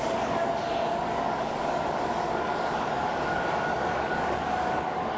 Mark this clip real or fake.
fake